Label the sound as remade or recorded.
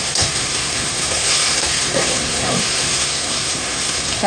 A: remade